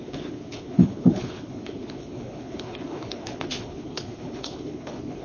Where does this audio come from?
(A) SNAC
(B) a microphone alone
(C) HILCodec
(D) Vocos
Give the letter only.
C